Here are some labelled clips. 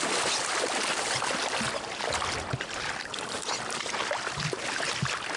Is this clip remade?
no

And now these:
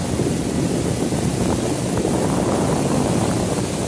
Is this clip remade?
yes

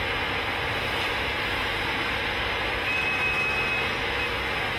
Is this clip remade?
no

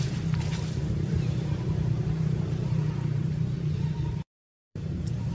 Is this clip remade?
yes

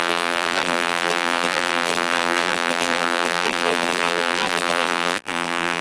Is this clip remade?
yes